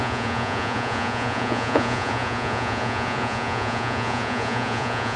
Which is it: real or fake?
fake